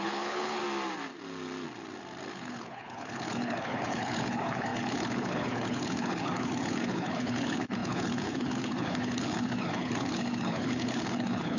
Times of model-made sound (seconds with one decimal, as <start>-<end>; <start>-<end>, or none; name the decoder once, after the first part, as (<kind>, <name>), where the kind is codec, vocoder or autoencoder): 0.0-0.6 (codec, HILCodec); 2.3-11.6